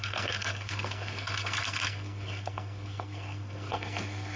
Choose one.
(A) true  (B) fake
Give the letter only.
B